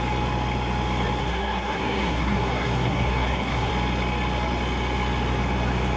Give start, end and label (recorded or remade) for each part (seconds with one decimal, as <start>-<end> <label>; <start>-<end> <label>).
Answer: 0.0-1.2 recorded; 1.2-3.7 remade; 3.7-6.0 recorded